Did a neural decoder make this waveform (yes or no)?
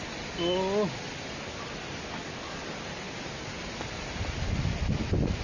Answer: no